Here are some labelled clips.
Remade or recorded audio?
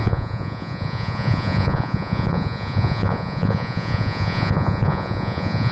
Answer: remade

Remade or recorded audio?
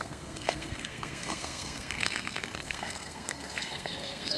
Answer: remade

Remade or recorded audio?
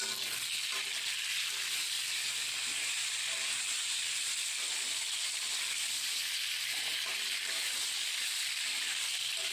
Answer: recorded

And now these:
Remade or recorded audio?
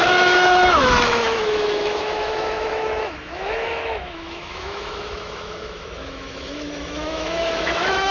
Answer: remade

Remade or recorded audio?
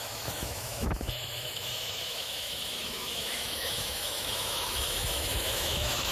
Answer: remade